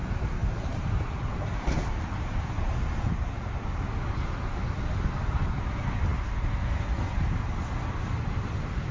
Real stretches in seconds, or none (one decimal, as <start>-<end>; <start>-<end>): 0.0-0.4; 3.2-8.9